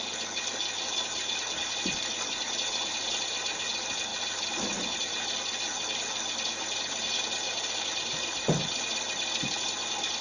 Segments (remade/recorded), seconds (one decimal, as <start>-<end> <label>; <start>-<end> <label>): 0.0-10.2 recorded